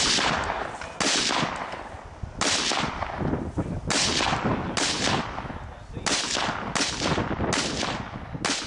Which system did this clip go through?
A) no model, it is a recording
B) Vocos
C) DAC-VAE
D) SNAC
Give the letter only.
A